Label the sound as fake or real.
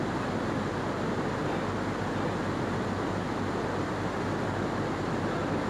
real